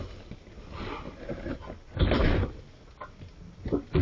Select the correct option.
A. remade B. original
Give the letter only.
B